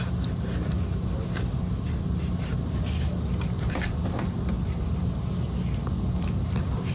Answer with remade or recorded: recorded